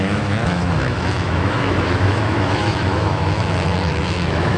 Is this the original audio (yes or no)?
no